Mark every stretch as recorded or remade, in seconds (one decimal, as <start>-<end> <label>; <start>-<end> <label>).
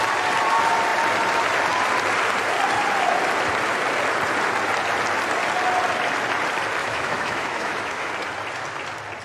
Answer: 0.0-6.8 recorded; 6.8-8.1 remade; 8.1-9.2 recorded